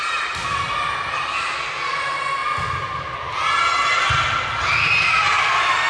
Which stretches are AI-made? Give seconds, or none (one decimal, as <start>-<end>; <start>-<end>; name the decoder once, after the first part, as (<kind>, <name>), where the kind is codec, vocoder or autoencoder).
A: none